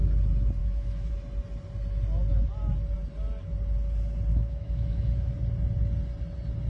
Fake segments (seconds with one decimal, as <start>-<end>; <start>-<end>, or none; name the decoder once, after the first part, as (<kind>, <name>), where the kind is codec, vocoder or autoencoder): 0.6-1.1 (autoencoder, DAC-VAE); 4.3-5.3